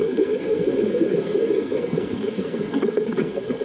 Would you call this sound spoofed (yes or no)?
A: yes